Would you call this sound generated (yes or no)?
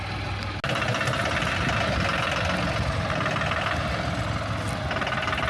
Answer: no